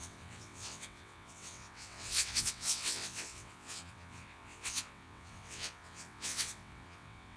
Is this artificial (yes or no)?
yes